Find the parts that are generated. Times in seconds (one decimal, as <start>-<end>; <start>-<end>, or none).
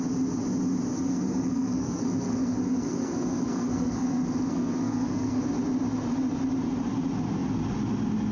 0.9-5.4